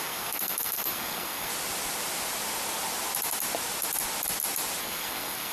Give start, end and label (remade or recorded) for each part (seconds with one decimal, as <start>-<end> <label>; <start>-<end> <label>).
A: 0.0-1.5 remade; 1.5-4.8 recorded; 4.8-5.5 remade